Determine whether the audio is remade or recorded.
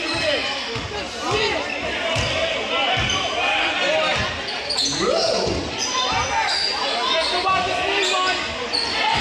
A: recorded